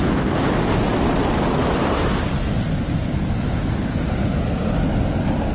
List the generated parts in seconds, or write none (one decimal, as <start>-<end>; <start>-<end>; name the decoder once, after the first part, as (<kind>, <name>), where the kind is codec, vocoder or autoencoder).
none